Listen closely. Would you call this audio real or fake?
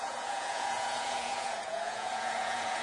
fake